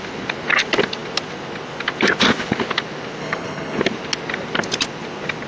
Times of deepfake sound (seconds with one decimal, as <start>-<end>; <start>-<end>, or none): 3.2-3.8